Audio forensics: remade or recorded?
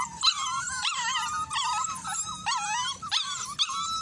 recorded